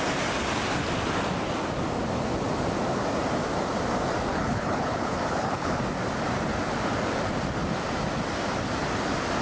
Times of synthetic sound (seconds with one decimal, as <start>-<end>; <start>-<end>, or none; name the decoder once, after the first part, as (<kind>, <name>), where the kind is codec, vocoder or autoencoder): 4.3-5.8 (codec, HILCodec)